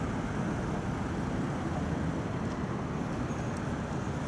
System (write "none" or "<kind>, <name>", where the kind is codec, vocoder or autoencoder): none